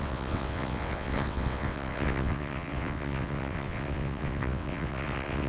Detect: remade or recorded remade